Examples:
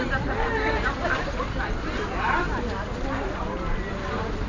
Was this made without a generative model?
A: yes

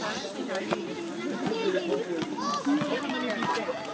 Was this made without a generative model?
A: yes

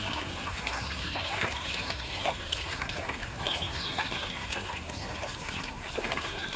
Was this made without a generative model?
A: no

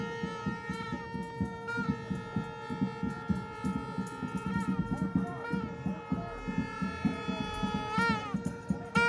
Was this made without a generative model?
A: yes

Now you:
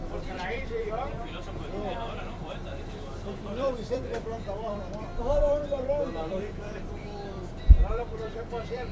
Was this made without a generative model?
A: no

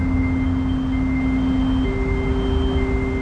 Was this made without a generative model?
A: yes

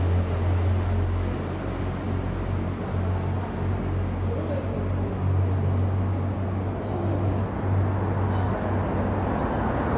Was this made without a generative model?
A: yes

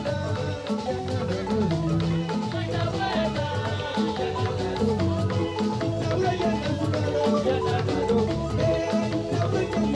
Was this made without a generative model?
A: yes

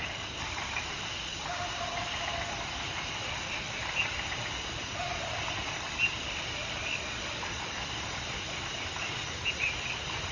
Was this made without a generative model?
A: no